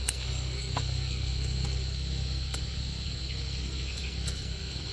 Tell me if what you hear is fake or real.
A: fake